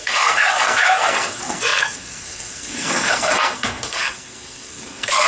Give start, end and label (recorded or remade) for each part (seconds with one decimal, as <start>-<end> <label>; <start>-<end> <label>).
0.0-5.3 remade